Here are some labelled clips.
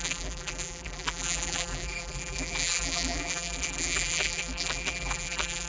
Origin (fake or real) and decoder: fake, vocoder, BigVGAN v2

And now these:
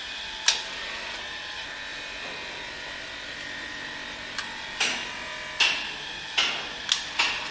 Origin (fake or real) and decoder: real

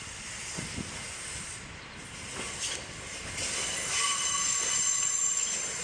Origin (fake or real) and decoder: real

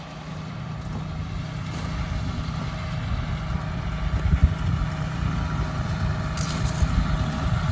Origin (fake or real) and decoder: real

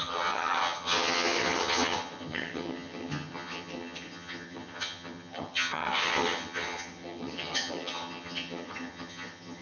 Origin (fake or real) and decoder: fake, vocoder, HiFi-GAN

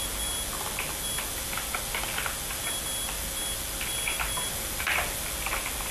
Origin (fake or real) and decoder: real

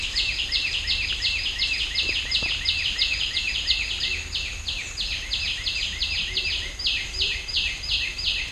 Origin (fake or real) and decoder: real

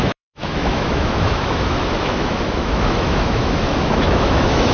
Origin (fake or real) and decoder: fake, autoencoder, DAC-VAE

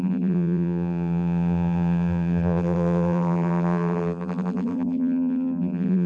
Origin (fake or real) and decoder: fake, vocoder, BigVGAN v2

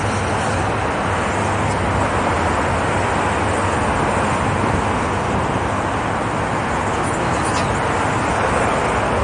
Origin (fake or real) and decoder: real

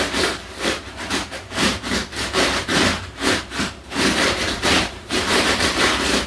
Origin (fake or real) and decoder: fake, vocoder, BigVGAN v2